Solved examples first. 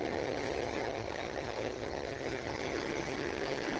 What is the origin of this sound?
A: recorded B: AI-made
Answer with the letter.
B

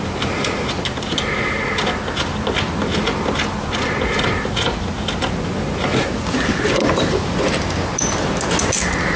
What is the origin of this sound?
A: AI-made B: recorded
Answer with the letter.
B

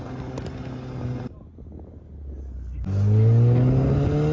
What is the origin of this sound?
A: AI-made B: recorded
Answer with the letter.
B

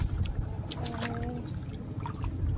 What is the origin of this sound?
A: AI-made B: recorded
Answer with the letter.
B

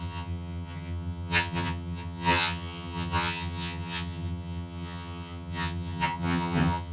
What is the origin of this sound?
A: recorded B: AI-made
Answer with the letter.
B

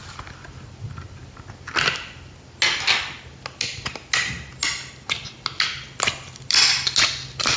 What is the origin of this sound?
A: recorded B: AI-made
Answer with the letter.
A